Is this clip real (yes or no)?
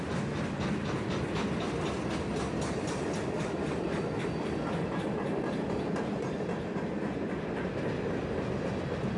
yes